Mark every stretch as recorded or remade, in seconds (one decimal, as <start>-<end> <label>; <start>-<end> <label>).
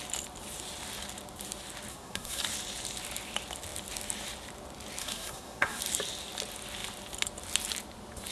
0.0-1.9 recorded; 1.9-2.4 remade; 2.4-5.0 recorded; 5.0-5.8 remade; 5.8-8.3 recorded